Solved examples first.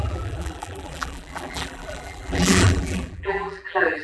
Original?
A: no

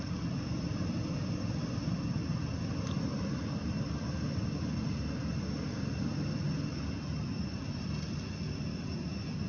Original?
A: yes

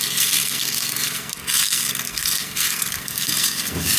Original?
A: no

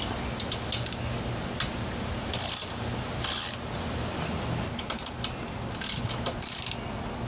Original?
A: yes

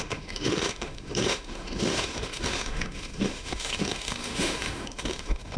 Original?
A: no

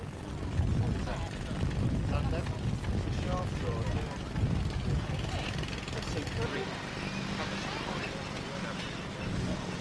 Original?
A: yes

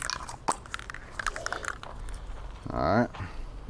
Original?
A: yes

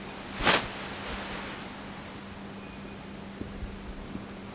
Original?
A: yes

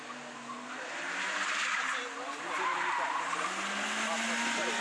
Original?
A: yes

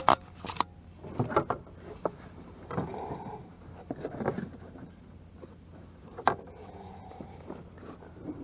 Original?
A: yes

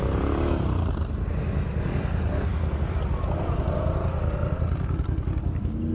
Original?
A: yes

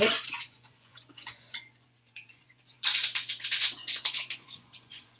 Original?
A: no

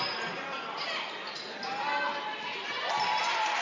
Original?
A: yes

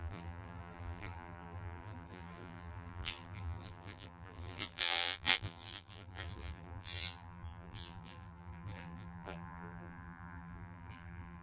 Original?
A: no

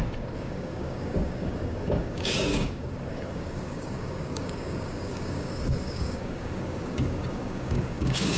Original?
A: no